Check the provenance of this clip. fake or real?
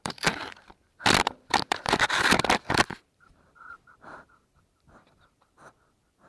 fake